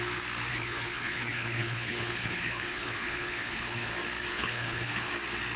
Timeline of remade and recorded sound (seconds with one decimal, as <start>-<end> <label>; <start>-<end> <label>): 0.0-0.5 recorded; 0.5-3.9 remade; 3.9-4.3 recorded; 4.3-5.1 remade; 5.1-5.6 recorded